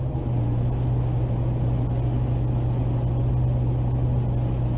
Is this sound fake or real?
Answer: real